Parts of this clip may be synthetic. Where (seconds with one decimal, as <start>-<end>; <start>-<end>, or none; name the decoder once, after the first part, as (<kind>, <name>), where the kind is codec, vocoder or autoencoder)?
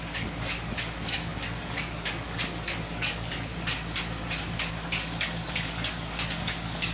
0.0-3.5 (codec, DAC); 4.7-6.9